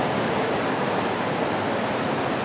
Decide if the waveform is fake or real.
real